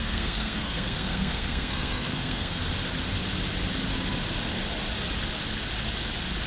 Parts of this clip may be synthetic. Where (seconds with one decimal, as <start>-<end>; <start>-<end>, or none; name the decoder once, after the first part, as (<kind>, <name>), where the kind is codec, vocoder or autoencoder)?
0.0-2.6 (codec, SNAC)